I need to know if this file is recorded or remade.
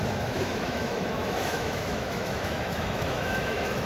remade